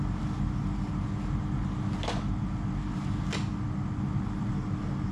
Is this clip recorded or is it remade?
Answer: recorded